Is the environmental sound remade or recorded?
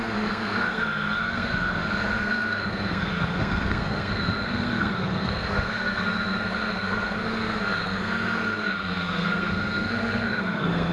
remade